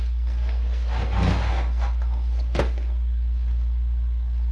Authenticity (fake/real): fake